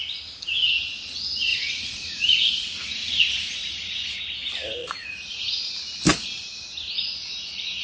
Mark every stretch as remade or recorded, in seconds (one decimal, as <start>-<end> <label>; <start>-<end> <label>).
0.0-1.5 recorded; 1.5-4.2 remade; 4.2-4.8 recorded; 4.8-5.3 remade; 5.3-6.1 recorded; 6.1-6.6 remade; 6.6-7.8 recorded